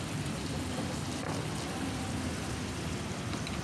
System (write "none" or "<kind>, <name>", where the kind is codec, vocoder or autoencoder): none